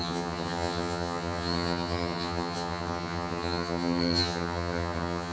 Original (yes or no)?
no